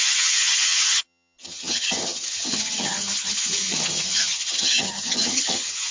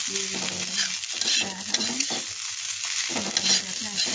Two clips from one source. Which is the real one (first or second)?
second